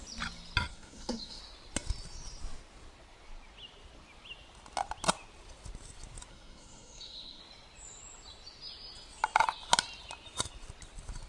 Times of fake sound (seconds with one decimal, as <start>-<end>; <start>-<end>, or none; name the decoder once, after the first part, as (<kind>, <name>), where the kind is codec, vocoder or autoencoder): 0.7-1.4 (codec, SNAC); 6.3-7.4